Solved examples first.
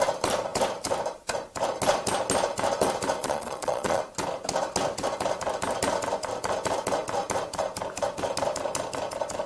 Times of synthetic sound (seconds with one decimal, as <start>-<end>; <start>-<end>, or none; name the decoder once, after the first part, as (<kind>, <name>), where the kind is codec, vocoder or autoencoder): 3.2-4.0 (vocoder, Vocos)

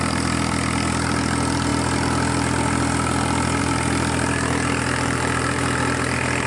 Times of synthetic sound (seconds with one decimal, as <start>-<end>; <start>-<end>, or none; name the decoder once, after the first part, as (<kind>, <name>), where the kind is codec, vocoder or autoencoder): none

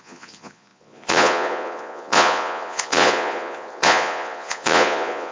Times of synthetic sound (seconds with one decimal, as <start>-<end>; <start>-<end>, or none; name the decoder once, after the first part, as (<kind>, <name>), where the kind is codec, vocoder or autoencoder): 0.0-5.3 (vocoder, Vocos)